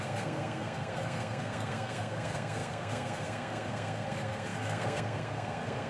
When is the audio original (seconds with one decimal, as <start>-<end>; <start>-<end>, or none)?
none